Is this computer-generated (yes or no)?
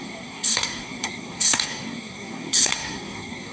yes